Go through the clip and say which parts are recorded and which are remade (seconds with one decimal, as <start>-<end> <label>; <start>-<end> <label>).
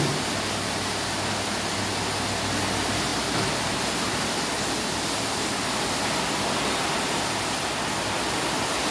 0.0-8.9 recorded